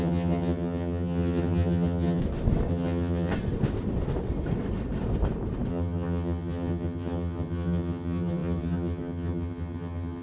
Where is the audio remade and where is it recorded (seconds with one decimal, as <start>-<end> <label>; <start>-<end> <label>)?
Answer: 0.0-2.2 remade; 2.2-2.7 recorded; 2.7-3.3 remade; 3.3-5.7 recorded; 5.7-10.2 remade